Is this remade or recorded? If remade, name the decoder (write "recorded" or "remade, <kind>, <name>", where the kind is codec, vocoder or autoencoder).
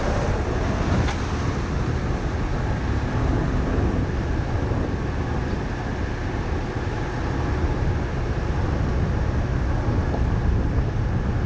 recorded